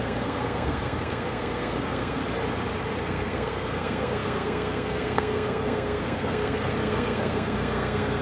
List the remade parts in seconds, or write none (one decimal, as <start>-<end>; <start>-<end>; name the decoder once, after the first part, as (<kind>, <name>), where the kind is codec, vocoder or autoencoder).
0.0-2.2 (codec, SNAC); 3.0-8.2